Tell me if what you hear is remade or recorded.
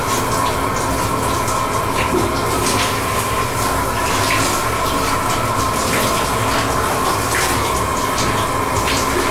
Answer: recorded